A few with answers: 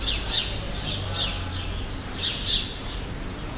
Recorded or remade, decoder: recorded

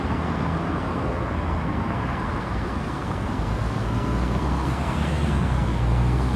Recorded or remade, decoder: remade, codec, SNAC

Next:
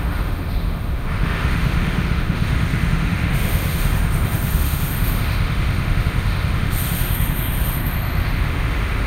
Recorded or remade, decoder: remade, autoencoder, DAC-VAE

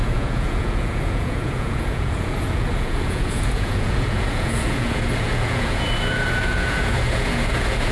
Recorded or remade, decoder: remade, vocoder, Vocos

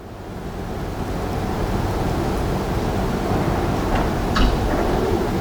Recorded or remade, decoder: recorded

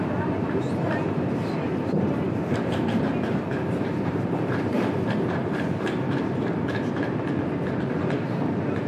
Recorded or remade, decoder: remade, vocoder, BigVGAN v2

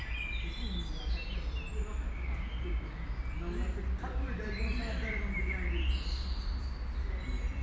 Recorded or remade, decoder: recorded